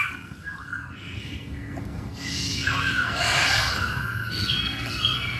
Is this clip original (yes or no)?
no